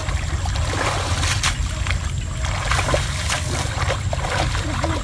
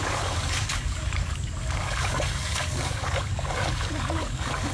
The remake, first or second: second